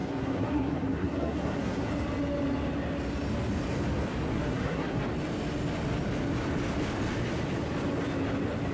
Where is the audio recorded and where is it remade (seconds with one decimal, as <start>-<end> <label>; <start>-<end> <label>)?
0.0-1.9 remade; 1.9-4.3 recorded; 4.3-5.0 remade; 5.0-8.7 recorded